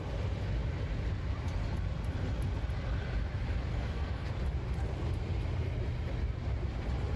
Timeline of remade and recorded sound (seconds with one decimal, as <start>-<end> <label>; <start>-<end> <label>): 0.0-3.7 recorded; 3.7-4.3 remade; 4.3-7.2 recorded